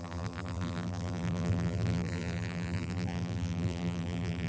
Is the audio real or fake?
fake